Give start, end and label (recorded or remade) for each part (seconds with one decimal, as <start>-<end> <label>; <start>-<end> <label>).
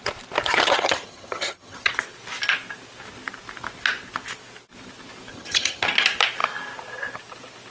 0.0-0.6 recorded; 0.6-1.9 remade; 1.9-5.3 recorded; 5.3-5.9 remade; 5.9-7.7 recorded